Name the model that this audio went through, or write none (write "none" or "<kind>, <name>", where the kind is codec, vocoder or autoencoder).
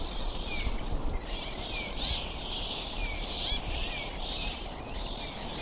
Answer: none